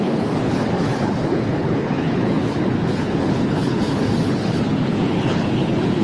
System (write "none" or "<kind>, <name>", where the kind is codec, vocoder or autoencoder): codec, HILCodec